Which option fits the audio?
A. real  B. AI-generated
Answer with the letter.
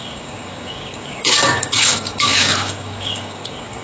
B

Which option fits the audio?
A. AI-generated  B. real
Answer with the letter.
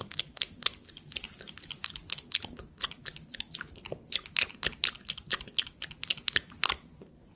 B